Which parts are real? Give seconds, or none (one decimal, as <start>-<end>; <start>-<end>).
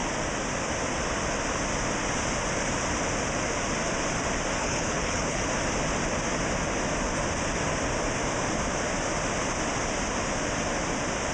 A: 0.0-4.6; 5.4-11.3